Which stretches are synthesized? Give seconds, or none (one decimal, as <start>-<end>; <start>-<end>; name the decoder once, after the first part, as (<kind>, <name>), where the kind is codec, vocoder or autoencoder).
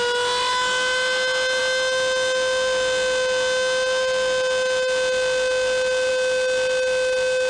none